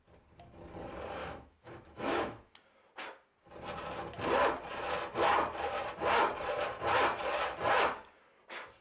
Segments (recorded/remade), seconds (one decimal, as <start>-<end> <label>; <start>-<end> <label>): 0.0-1.2 recorded; 1.2-2.5 remade; 2.5-8.8 recorded